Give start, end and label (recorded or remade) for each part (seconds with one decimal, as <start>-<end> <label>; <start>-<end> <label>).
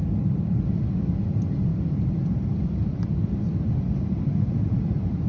0.0-0.6 remade; 0.6-1.7 recorded; 1.7-5.3 remade